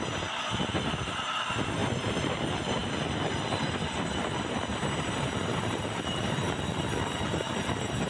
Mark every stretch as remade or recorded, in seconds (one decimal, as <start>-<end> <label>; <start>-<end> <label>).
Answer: 0.0-1.8 recorded; 1.8-2.4 remade; 2.4-4.7 recorded; 4.7-6.6 remade; 6.6-8.1 recorded